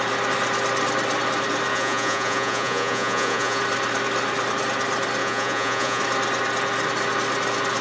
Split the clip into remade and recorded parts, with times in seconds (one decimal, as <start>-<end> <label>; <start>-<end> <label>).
0.0-1.7 recorded; 1.7-3.6 remade; 3.6-5.2 recorded; 5.2-6.0 remade; 6.0-7.8 recorded